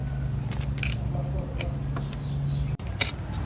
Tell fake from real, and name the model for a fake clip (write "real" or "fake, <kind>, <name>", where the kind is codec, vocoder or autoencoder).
real